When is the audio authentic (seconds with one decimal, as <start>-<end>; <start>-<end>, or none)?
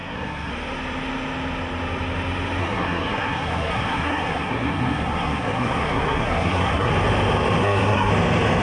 0.5-2.6; 6.9-7.6; 8.1-8.6